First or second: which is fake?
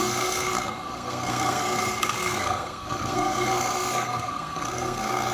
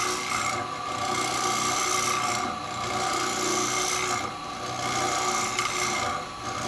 first